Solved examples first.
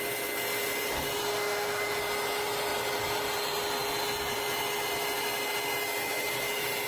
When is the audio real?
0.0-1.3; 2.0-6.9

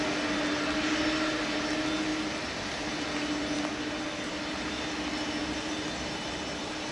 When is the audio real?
0.0-6.9

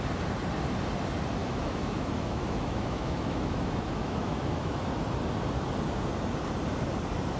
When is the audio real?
0.0-1.4; 4.7-7.4

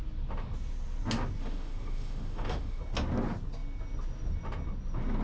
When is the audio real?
0.0-1.4; 2.8-5.2